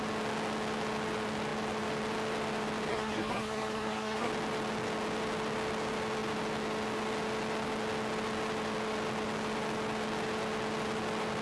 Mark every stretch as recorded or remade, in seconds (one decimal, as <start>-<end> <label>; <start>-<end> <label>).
0.0-2.9 recorded; 2.9-4.3 remade; 4.3-11.4 recorded